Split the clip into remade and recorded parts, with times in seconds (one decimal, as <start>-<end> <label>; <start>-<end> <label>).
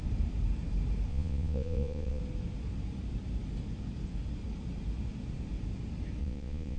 0.0-1.1 recorded; 1.1-2.2 remade; 2.2-6.2 recorded; 6.2-6.8 remade